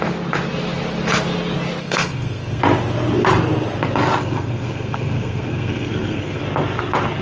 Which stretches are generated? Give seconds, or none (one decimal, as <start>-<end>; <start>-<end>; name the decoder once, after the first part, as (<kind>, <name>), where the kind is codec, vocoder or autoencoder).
1.8-2.6 (codec, SNAC); 4.2-6.4